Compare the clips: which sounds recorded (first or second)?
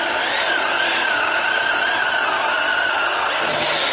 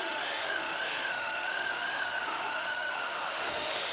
first